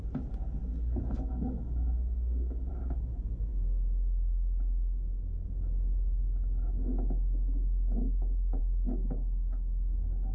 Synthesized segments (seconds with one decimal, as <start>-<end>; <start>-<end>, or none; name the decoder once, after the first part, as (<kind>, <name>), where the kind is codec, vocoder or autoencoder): 0.6-2.7 (codec, SNAC)